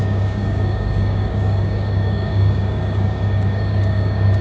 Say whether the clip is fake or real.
fake